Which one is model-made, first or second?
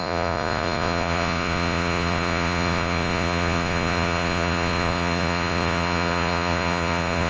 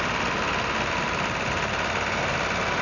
first